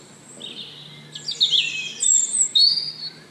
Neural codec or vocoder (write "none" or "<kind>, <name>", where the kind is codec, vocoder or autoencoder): none